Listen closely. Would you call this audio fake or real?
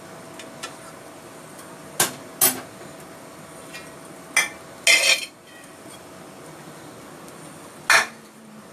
real